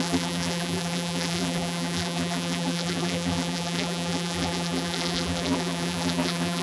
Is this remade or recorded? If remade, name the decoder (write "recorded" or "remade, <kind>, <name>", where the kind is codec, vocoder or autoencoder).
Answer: remade, vocoder, BigVGAN v2